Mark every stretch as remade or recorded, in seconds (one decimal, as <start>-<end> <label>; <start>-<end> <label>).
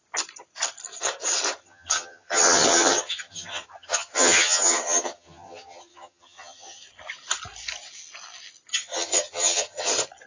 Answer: 0.0-1.6 recorded; 1.6-6.8 remade; 6.8-8.7 recorded; 8.7-9.9 remade; 9.9-10.3 recorded